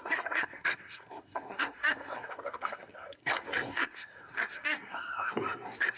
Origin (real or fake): fake